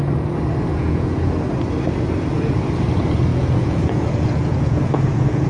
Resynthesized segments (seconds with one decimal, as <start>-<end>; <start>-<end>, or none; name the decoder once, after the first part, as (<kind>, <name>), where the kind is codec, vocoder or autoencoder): 0.7-1.3 (vocoder, Vocos); 3.3-5.5